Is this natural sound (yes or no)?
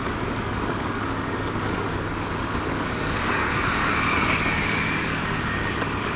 no